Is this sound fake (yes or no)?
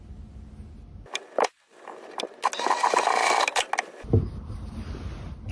no